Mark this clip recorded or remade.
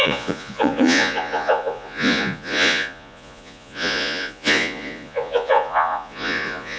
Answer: remade